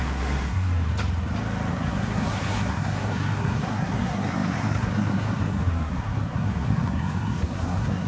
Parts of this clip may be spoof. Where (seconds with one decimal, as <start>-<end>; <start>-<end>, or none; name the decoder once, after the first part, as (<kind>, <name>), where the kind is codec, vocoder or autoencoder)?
0.0-0.9 (codec, SNAC); 1.7-8.1